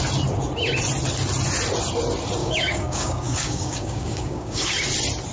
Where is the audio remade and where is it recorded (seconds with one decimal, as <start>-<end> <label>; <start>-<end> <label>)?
0.0-2.4 recorded; 2.4-4.7 remade; 4.7-5.3 recorded